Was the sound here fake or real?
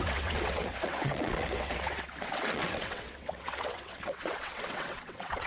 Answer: fake